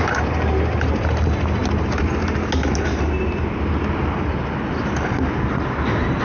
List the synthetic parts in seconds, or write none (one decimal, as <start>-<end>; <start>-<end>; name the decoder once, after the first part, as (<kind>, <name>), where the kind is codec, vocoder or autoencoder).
none